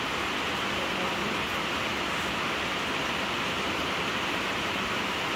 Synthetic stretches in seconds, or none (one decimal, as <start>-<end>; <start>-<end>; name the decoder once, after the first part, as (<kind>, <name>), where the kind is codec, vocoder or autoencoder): none

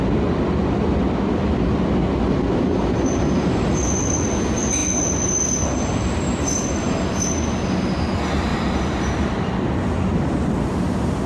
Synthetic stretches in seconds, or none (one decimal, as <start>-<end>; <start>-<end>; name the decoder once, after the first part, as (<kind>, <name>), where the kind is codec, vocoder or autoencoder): 8.5-9.1 (vocoder, BigVGAN v2)

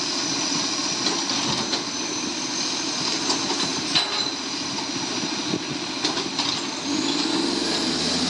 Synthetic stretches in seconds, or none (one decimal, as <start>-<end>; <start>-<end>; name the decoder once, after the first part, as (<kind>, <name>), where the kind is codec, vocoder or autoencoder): 3.7-4.3 (vocoder, BigVGAN v2)